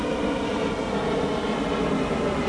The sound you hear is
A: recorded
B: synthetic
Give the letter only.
A